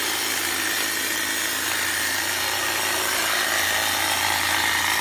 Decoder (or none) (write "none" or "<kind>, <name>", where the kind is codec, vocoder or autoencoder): none